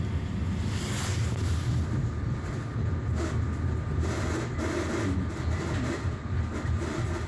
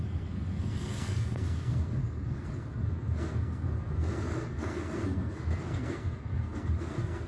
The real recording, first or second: first